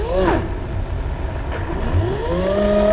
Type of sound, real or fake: real